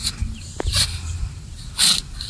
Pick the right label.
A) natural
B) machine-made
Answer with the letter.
A